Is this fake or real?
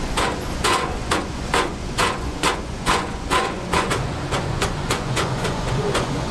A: fake